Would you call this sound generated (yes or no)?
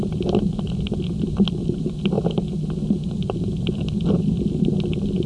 no